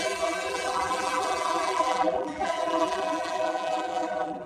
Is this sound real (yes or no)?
no